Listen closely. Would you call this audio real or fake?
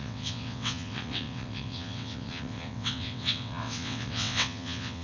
fake